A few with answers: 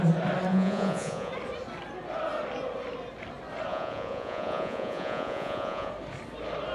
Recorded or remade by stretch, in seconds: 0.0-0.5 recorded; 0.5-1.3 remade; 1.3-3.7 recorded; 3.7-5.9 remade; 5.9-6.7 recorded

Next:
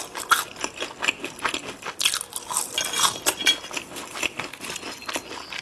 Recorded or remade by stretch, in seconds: 0.0-5.6 recorded

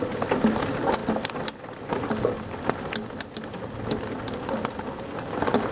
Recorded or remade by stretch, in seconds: 0.0-5.7 recorded

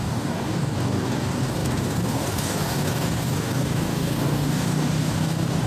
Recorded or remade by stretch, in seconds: 0.0-5.7 remade